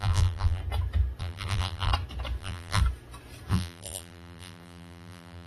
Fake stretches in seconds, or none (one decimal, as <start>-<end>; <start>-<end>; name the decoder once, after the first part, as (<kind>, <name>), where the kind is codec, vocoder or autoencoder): 0.0-0.6 (vocoder, BigVGAN v2); 1.2-1.9; 2.4-2.8; 3.5-5.5